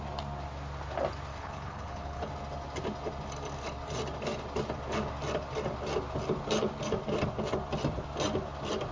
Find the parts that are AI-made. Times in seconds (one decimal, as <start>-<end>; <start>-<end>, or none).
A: 1.3-2.3